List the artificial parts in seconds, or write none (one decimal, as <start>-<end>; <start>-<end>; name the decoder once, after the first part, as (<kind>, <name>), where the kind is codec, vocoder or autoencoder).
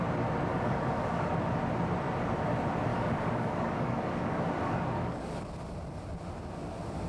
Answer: 0.5-1.3 (codec, DAC); 2.9-5.5